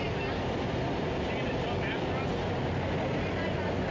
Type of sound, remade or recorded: recorded